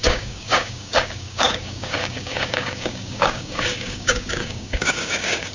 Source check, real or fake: fake